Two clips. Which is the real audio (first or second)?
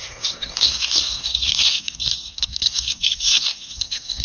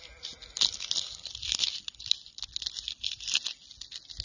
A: second